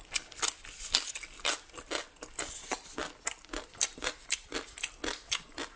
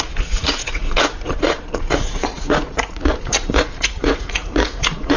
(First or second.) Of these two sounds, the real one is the first